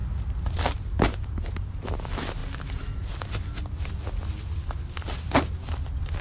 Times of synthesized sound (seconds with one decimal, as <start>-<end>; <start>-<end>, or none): none